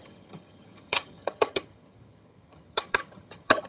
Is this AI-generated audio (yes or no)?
yes